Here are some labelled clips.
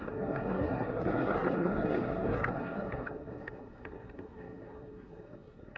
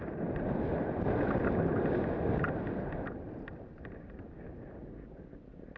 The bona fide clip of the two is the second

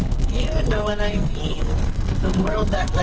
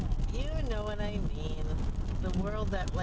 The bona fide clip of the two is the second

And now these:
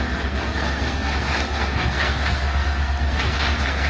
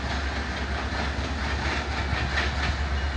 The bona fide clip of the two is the second